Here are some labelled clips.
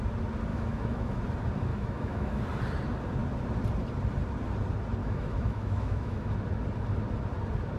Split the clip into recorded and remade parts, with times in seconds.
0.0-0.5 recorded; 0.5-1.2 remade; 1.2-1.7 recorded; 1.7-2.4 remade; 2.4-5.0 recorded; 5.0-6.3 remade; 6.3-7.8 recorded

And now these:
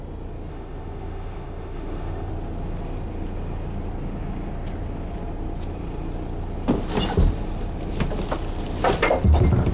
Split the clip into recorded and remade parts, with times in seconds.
0.0-0.5 recorded; 0.5-2.3 remade; 2.3-9.7 recorded

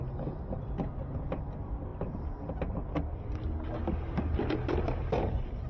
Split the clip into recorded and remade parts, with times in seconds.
0.0-5.7 recorded

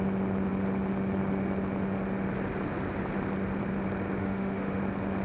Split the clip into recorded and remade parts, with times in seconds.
0.0-4.2 recorded; 4.2-4.8 remade; 4.8-5.2 recorded

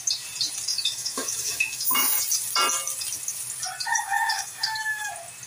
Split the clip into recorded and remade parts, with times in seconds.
0.0-0.7 recorded; 0.7-2.2 remade; 2.2-3.9 recorded; 3.9-5.1 remade; 5.1-5.5 recorded